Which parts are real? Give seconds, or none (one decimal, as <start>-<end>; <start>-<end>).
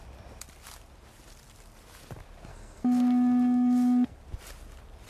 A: 0.0-2.5; 4.2-5.1